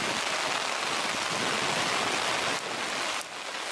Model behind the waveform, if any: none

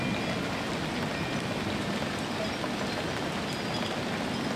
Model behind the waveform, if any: none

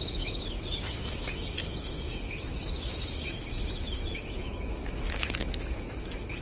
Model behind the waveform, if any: autoencoder, DAC-VAE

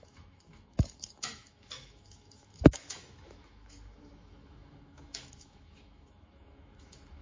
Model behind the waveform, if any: autoencoder, DAC-VAE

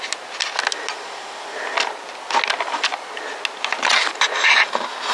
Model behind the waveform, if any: none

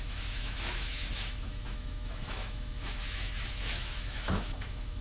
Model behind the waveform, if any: autoencoder, DAC-VAE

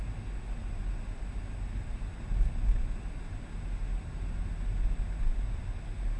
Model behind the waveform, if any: none